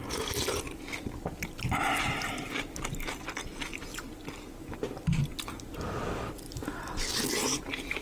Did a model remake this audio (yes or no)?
no